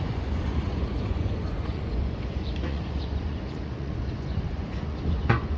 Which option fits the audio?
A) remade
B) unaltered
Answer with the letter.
A